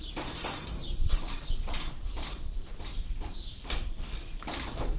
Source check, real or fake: fake